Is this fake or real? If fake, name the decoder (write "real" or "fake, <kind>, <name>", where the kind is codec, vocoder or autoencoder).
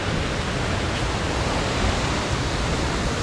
real